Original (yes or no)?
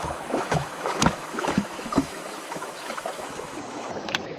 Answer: no